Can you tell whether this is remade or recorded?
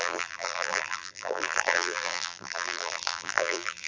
remade